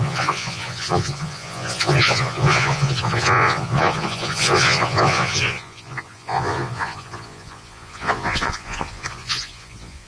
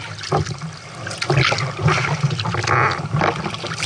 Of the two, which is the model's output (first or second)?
first